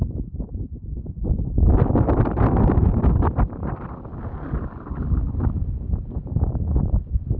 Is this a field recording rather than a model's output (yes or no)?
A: yes